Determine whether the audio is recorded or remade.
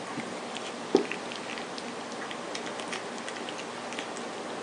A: recorded